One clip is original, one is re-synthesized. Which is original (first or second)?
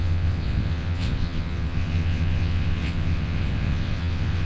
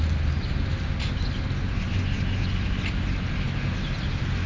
second